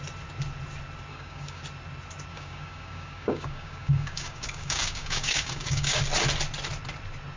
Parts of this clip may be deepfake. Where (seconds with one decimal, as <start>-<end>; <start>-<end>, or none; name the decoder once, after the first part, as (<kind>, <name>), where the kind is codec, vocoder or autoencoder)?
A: 1.1-1.6 (codec, DAC); 2.3-6.0